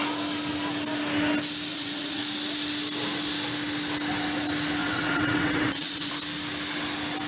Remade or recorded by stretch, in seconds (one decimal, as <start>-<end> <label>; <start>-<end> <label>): 0.0-1.7 recorded; 1.7-2.2 remade; 2.2-4.8 recorded; 4.8-6.1 remade; 6.1-7.3 recorded